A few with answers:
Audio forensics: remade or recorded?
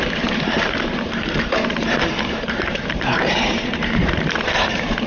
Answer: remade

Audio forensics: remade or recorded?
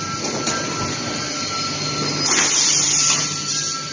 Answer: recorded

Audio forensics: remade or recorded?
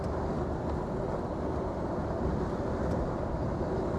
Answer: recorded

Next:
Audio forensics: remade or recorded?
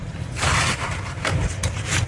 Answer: remade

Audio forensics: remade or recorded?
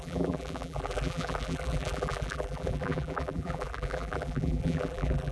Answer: remade